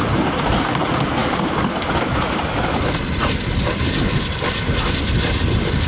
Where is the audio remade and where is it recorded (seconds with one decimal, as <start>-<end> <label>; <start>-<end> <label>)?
0.0-5.9 recorded